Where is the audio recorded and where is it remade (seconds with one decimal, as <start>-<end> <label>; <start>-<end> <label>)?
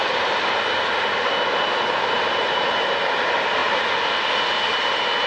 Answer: 0.0-5.3 recorded